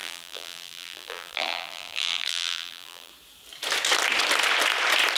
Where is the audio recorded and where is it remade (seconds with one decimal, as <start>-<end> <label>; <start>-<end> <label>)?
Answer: 0.0-3.1 remade; 3.1-5.2 recorded

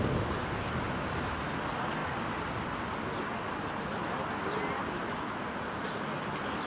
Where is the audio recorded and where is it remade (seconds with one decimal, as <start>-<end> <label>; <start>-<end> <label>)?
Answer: 0.0-6.7 recorded

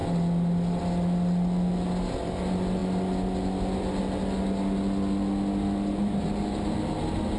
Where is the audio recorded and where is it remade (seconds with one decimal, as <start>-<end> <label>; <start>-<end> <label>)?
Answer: 0.0-7.4 recorded

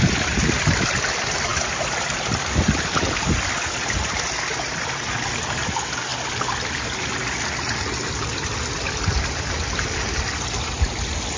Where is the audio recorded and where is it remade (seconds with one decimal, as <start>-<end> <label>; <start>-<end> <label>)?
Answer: 0.0-11.4 recorded

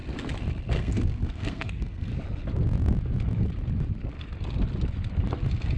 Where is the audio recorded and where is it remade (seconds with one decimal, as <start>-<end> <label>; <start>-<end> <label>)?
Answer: 0.0-0.8 recorded; 0.8-2.1 remade; 2.1-5.8 recorded

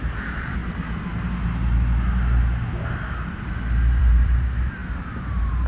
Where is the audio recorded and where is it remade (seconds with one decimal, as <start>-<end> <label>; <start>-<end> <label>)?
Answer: 0.0-0.6 remade; 0.6-4.0 recorded; 4.0-5.7 remade